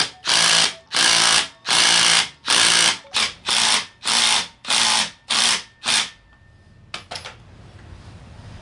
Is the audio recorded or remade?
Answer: recorded